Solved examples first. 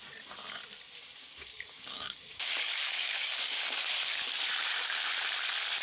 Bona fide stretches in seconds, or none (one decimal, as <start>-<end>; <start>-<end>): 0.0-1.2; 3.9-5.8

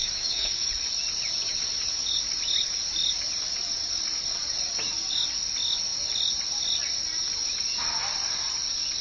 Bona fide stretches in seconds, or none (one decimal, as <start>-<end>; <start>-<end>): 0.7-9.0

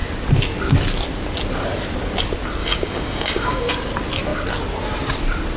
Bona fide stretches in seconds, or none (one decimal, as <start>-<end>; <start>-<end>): 0.0-2.6; 3.7-5.6